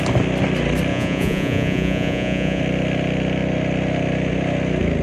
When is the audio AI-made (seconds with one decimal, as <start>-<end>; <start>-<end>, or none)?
0.9-2.6